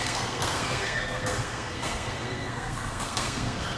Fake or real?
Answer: fake